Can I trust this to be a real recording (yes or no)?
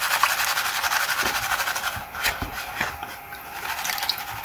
yes